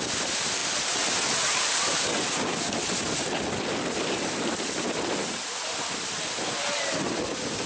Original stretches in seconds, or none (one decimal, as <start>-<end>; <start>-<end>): 0.0-7.7